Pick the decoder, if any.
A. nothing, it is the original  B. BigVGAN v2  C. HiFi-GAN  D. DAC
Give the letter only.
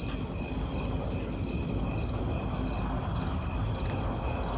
A